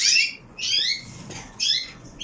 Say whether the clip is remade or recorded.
remade